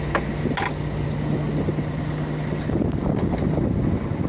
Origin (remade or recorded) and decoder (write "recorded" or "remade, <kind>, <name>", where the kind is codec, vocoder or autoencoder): recorded